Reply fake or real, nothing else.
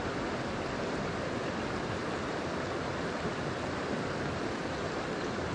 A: real